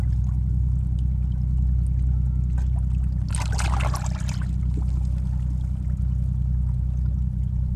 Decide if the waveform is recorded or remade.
recorded